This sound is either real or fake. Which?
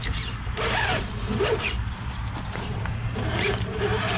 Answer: fake